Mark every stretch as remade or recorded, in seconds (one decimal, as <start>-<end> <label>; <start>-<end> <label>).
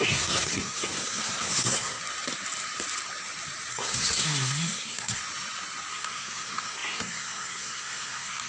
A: 0.0-2.0 remade; 2.0-3.7 recorded; 3.7-5.2 remade; 5.2-5.9 recorded; 5.9-8.5 remade